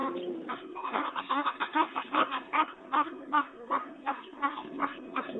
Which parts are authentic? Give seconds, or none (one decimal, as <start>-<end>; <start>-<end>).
0.0-0.5